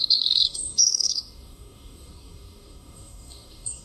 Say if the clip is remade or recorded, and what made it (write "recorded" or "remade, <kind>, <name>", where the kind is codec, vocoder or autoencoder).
remade, codec, DAC